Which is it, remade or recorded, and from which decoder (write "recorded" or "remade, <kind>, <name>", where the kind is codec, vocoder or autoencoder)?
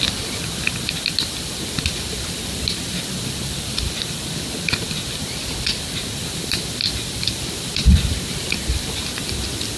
remade, vocoder, BigVGAN v2